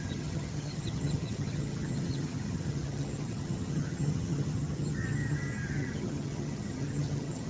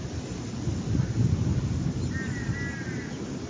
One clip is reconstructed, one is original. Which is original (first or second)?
second